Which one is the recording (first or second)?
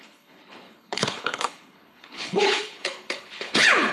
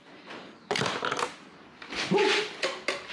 second